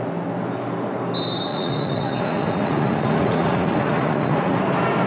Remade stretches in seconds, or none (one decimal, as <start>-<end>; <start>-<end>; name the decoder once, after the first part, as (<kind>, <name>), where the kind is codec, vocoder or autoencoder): 1.5-4.6 (vocoder, Vocos)

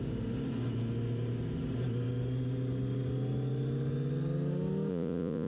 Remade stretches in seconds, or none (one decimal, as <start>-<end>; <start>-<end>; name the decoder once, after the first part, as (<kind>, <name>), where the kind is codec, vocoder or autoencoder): 4.9-5.5 (vocoder, Vocos)

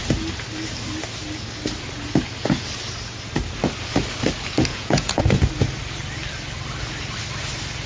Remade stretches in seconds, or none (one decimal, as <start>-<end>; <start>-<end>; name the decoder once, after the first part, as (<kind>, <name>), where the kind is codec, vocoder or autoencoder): 4.7-5.2 (vocoder, Vocos)

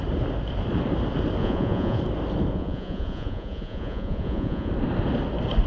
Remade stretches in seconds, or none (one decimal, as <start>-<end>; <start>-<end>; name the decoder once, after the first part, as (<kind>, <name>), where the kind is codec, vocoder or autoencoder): 1.4-2.0 (vocoder, Vocos); 2.5-4.7

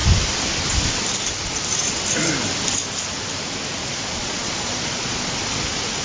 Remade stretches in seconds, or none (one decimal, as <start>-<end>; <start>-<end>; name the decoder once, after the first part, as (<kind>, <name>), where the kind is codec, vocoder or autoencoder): 3.8-5.3 (vocoder, Vocos)

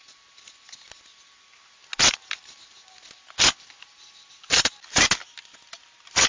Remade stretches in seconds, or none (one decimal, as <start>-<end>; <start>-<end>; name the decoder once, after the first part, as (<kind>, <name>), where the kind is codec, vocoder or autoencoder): none

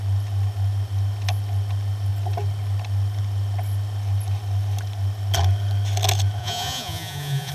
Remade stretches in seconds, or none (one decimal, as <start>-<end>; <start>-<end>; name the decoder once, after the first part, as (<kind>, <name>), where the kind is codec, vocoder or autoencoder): 6.4-7.5 (vocoder, Vocos)